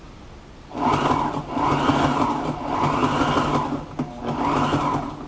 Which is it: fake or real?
real